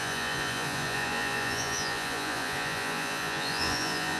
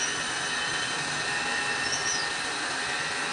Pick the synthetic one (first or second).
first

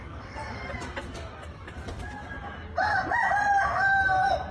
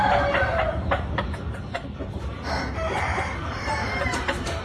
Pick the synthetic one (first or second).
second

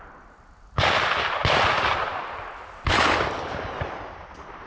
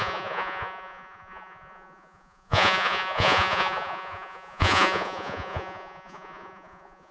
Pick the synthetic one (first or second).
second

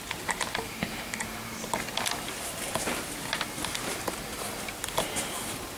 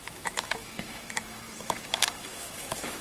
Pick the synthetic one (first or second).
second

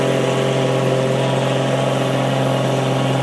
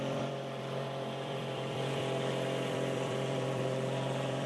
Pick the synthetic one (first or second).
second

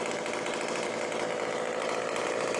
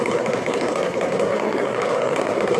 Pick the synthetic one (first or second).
second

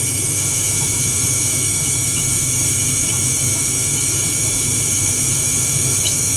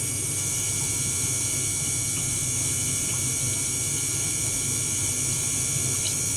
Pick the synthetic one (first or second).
first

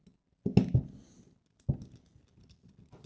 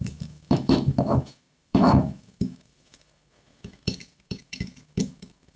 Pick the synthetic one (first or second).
second